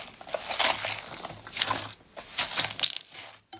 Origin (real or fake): real